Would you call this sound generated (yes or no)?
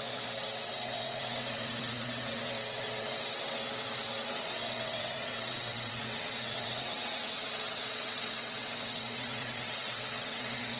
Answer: yes